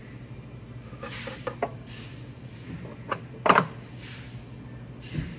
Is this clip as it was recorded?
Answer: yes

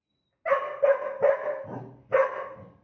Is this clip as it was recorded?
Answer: yes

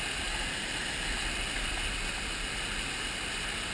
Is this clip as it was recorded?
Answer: yes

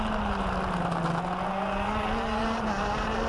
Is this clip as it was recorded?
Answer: yes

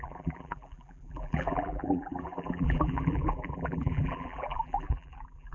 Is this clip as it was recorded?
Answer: no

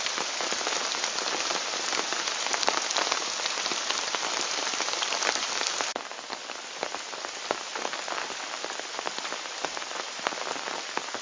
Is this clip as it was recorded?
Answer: no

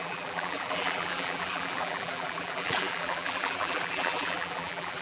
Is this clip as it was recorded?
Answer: no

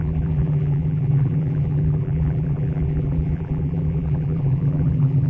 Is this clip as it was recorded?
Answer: no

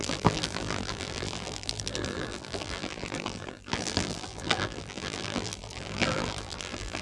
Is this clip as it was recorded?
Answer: no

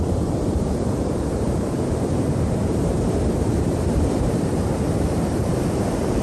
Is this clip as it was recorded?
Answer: no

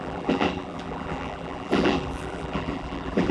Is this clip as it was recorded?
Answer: no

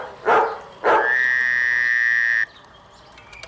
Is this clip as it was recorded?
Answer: yes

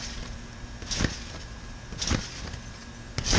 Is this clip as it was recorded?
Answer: yes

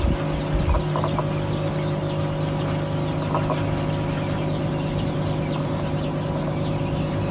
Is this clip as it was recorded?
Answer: yes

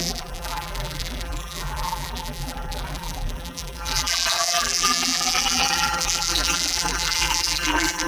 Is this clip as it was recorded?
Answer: no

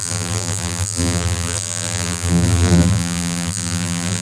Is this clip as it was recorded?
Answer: no